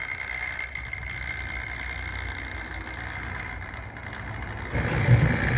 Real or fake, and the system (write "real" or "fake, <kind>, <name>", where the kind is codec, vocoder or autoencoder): real